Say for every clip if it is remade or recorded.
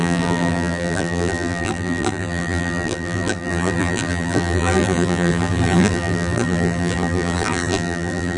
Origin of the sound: remade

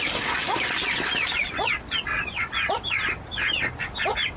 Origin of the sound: recorded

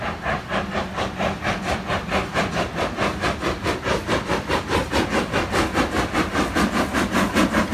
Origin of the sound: recorded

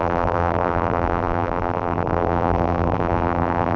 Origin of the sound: remade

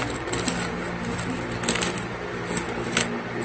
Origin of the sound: recorded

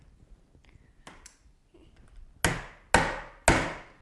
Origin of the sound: recorded